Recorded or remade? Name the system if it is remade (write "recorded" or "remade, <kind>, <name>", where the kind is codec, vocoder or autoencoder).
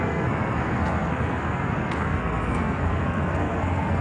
remade, codec, SNAC